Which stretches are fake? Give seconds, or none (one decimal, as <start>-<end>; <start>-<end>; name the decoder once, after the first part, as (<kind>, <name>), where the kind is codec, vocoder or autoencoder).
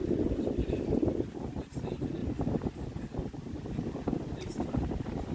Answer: 2.2-2.8 (vocoder, BigVGAN v2); 4.1-5.3